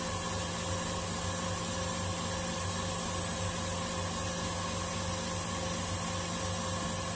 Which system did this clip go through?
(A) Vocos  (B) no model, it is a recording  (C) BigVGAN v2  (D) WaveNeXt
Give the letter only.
B